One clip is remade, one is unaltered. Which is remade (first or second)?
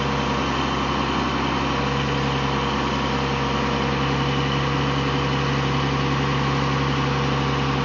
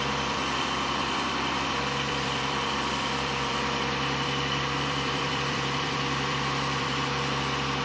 second